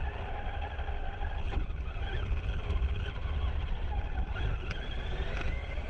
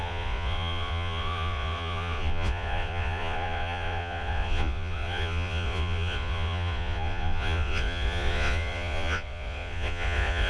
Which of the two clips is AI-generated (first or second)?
second